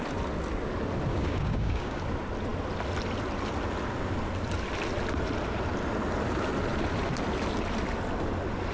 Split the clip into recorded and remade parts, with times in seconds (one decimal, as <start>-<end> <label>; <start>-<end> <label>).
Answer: 0.0-1.1 recorded; 1.1-2.0 remade; 2.0-8.7 recorded

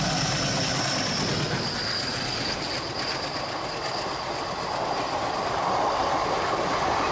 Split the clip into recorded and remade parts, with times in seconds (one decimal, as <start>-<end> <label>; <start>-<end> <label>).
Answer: 0.0-7.1 recorded

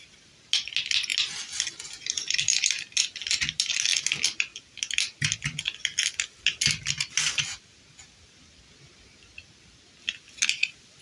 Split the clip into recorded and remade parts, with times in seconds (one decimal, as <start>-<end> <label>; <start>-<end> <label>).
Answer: 0.0-11.0 recorded

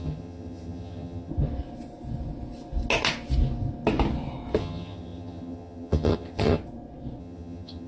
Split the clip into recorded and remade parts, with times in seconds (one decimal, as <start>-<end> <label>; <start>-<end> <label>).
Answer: 0.0-1.3 remade; 1.3-4.6 recorded; 4.6-6.6 remade; 6.6-7.2 recorded; 7.2-7.9 remade

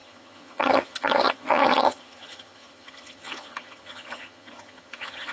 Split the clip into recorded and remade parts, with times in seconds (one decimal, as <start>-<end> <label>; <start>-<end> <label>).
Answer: 0.0-5.3 remade